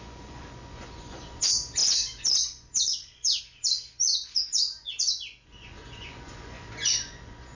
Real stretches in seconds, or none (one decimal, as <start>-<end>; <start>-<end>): none